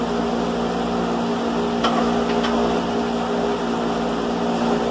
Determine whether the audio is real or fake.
real